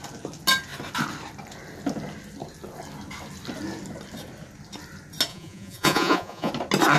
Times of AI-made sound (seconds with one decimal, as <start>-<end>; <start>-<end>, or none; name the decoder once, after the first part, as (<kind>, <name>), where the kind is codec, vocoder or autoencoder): 5.3-6.5 (vocoder, Vocos)